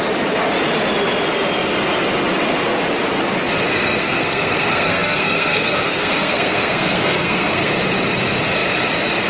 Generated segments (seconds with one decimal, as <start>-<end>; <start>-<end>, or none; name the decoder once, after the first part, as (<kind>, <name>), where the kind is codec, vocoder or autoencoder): 3.7-7.7 (codec, SNAC)